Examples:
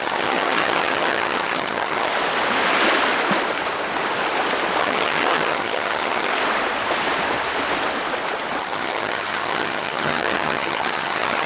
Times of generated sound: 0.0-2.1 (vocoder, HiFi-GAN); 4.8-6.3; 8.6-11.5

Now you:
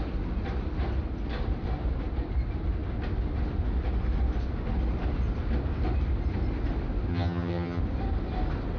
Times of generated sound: 7.1-7.8 (vocoder, HiFi-GAN)

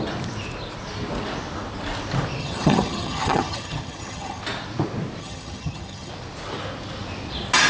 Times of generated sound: 2.4-4.4 (vocoder, HiFi-GAN); 5.2-6.1